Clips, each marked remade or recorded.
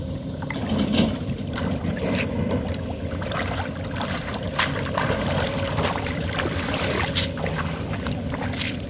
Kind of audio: remade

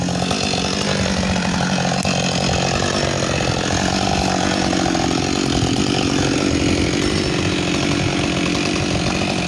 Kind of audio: recorded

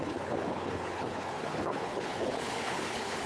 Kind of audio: remade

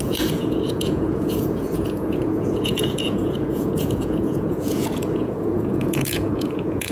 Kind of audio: remade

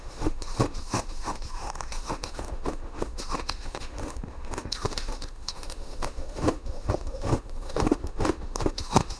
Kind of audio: remade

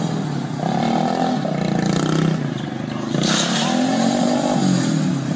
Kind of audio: recorded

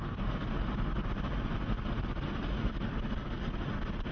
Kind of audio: recorded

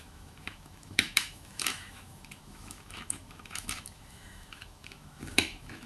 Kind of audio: remade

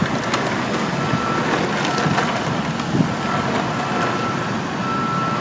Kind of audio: recorded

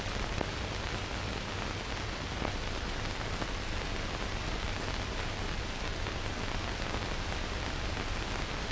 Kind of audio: recorded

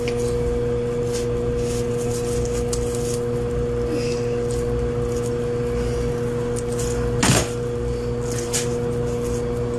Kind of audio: recorded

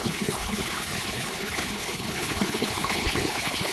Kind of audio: remade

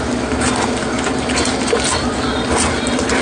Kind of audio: recorded